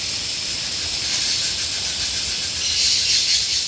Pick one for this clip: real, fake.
real